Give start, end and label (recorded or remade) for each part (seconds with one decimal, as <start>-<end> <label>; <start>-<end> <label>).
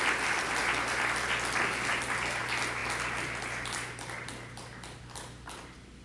0.0-6.0 recorded